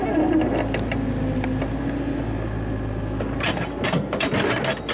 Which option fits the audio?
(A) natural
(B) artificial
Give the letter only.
A